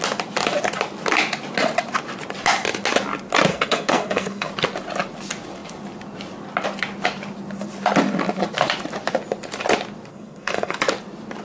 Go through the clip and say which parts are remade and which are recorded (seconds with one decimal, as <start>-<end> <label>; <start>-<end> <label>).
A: 0.0-3.5 recorded; 3.5-4.5 remade; 4.5-10.1 recorded; 10.1-10.8 remade; 10.8-11.4 recorded